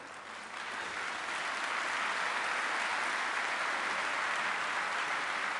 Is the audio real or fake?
real